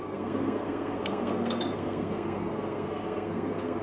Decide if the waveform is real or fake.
fake